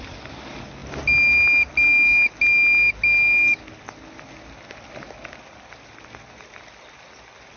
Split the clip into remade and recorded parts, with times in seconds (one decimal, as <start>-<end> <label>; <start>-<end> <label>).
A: 0.0-7.6 recorded